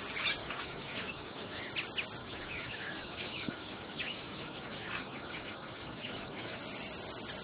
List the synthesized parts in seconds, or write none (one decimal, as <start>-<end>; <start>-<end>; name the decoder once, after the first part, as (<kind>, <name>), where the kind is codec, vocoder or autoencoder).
0.4-1.7 (codec, DAC); 2.2-6.6